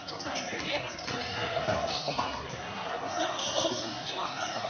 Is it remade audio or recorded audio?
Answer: remade